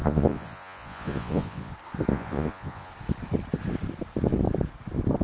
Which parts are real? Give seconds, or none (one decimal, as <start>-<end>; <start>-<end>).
1.7-2.1; 2.9-5.2